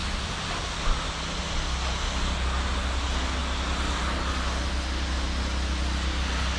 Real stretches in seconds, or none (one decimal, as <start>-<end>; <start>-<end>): 0.0-6.6